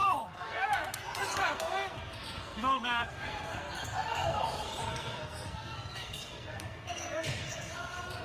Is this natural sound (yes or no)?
no